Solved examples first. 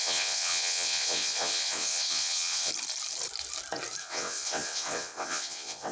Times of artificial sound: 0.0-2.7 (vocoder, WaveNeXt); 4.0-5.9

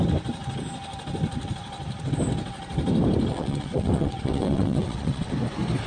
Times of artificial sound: 3.3-5.3 (vocoder, WaveNeXt)

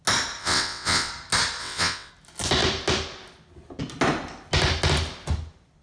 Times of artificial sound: 0.4-1.1 (vocoder, WaveNeXt); 1.6-2.1